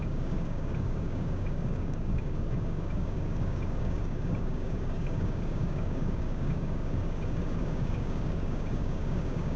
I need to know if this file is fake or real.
fake